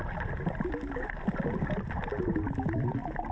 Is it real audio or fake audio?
real